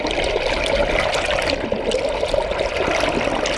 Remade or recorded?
recorded